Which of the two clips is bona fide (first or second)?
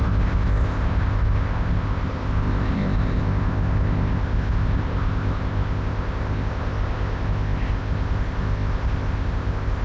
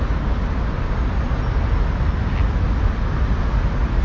second